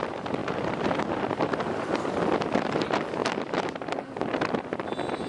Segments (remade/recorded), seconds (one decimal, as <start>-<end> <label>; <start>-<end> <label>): 0.0-0.4 recorded; 0.4-1.5 remade; 1.5-5.3 recorded